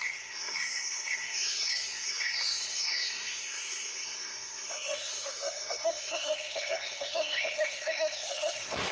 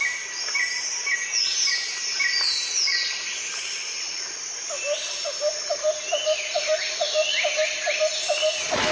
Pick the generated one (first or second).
first